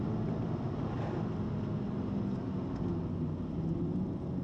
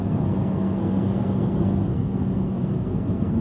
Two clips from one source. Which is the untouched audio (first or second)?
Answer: first